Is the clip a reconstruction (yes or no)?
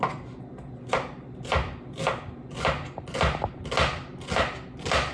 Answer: no